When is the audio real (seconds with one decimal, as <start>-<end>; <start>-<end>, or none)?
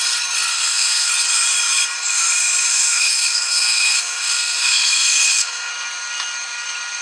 0.0-0.5; 1.1-2.7; 5.7-7.0